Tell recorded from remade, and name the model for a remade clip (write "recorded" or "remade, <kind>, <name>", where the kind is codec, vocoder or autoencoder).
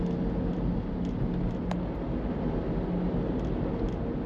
recorded